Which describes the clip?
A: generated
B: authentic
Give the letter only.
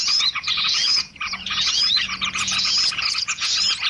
A